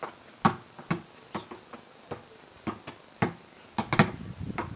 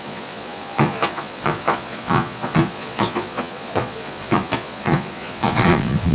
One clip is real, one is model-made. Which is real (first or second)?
first